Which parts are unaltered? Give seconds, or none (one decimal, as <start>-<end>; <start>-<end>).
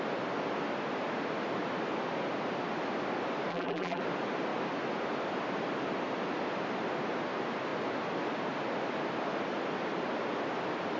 0.0-3.5; 4.0-11.0